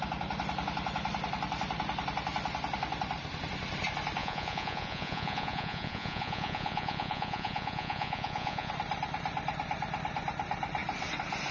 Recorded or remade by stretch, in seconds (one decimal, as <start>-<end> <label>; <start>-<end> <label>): 0.0-4.2 recorded; 4.2-8.7 remade; 8.7-11.5 recorded